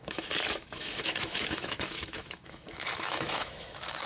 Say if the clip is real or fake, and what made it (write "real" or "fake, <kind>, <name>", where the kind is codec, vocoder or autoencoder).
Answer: fake, autoencoder, DAC-VAE